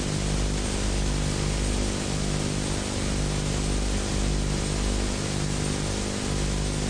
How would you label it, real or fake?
real